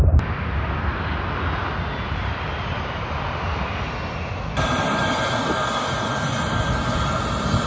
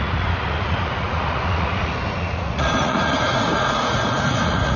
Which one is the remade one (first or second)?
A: second